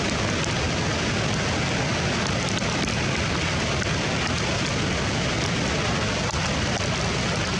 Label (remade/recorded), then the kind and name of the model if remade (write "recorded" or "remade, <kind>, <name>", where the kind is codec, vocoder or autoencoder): recorded